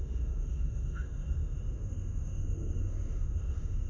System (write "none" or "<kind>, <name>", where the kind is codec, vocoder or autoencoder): autoencoder, DAC-VAE